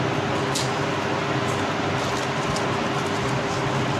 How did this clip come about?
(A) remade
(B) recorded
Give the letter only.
B